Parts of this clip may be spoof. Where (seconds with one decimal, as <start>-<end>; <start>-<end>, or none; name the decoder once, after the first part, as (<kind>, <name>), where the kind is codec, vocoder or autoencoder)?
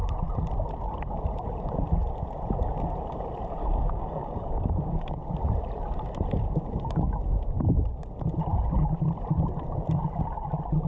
3.6-5.1 (codec, DAC)